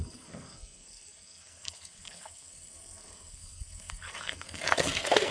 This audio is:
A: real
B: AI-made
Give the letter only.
B